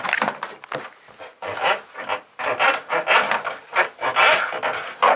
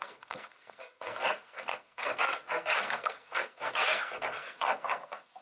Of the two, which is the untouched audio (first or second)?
first